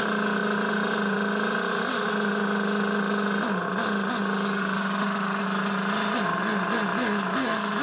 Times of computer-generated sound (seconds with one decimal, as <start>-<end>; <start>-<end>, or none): none